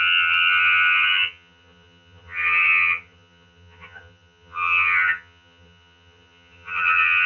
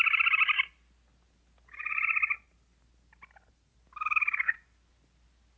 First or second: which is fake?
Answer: first